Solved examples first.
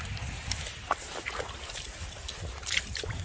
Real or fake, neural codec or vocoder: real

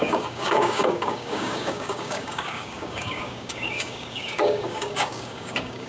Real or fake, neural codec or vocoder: fake, codec, DAC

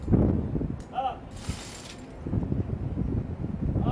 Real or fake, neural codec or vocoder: real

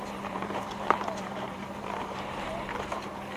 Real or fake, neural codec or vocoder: fake, vocoder, BigVGAN v2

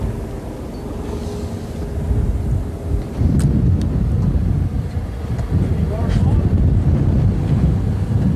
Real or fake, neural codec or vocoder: real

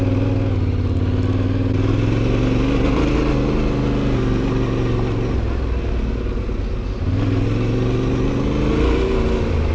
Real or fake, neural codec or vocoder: real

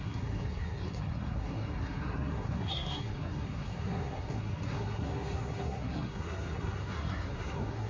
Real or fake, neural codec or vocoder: fake, codec, SNAC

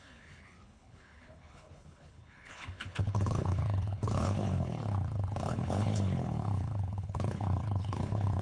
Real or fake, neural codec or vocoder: fake, codec, HILCodec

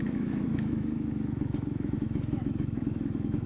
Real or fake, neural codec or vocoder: fake, autoencoder, DAC-VAE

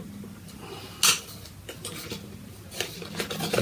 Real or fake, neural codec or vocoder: real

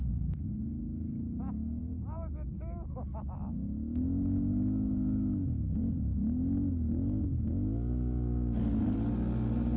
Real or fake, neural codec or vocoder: real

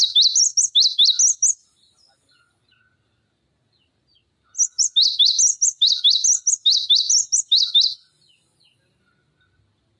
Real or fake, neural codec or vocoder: real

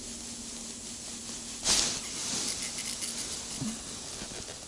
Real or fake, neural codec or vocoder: real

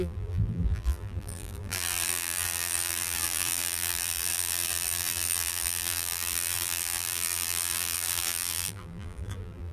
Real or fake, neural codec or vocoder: fake, vocoder, BigVGAN v2